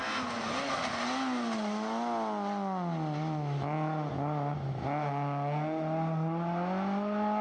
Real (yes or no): yes